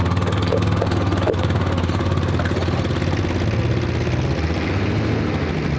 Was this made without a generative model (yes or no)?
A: yes